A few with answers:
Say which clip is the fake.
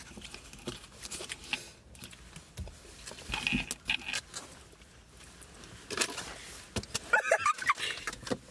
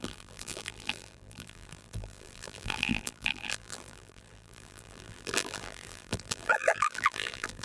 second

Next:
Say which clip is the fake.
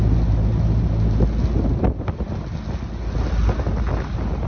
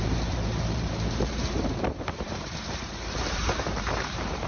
second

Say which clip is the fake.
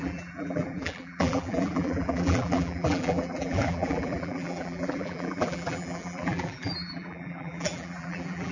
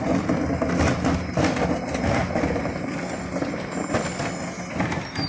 first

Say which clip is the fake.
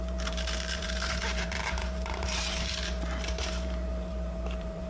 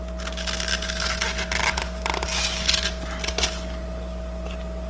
first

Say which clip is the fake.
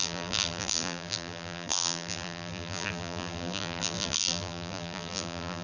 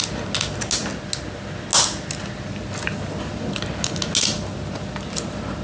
first